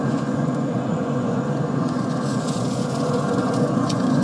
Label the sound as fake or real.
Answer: fake